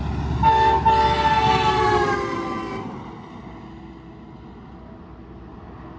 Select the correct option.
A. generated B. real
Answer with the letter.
B